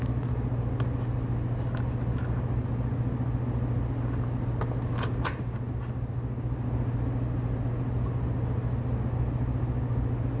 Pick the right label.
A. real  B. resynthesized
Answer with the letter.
A